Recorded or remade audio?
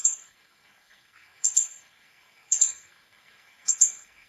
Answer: remade